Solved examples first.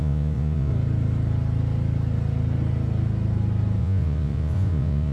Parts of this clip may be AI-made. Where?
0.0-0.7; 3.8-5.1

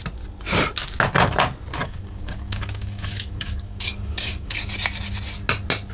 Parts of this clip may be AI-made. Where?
1.8-4.6